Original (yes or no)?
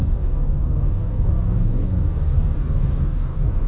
no